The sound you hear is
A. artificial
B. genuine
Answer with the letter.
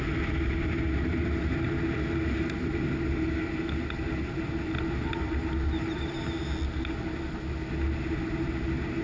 B